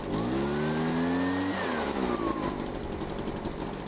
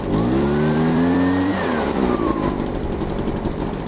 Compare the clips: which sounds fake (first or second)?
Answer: second